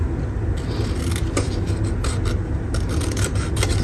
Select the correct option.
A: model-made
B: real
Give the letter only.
B